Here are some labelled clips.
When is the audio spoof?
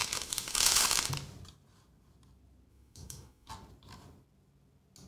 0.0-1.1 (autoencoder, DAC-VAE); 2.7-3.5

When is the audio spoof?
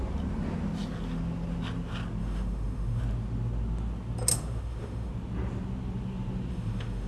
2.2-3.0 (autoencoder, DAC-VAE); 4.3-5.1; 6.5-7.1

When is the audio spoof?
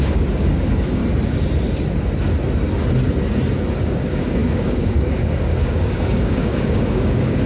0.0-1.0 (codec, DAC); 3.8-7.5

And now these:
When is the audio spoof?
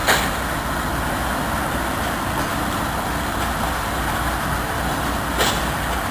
2.5-4.4 (vocoder, BigVGAN v2)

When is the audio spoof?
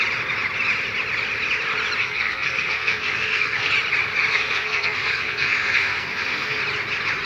2.0-3.7 (codec, SNAC); 4.3-6.6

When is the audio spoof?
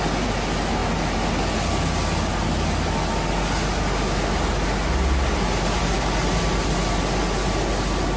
none